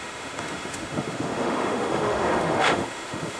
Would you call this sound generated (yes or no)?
yes